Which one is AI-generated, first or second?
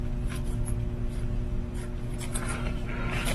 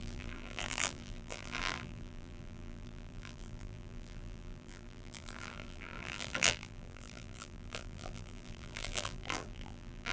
second